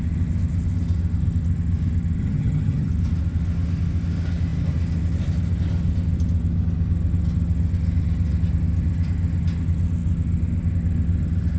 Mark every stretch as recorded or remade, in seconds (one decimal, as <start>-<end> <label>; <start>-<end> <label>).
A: 0.0-2.2 recorded; 2.2-2.9 remade; 2.9-11.6 recorded